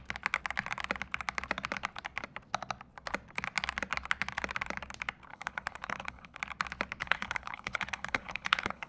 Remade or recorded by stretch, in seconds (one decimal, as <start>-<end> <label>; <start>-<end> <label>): 0.0-5.3 recorded; 5.3-6.4 remade; 6.4-7.0 recorded; 7.0-8.9 remade